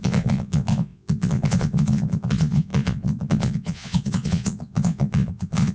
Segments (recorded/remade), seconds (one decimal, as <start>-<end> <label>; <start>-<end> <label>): 0.0-5.7 remade